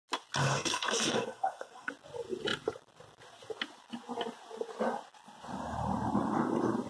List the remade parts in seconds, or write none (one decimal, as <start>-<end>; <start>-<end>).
0.4-1.9